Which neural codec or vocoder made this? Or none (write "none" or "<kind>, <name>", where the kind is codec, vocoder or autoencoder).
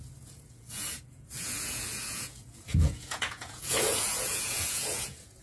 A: vocoder, Vocos